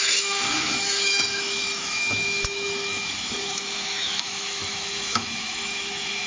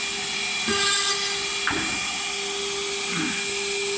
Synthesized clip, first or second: first